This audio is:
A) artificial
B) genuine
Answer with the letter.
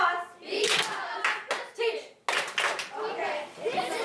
B